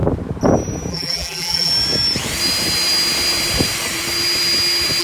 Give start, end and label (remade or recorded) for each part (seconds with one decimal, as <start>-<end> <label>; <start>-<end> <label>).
0.0-0.9 recorded; 0.9-1.7 remade; 1.7-5.0 recorded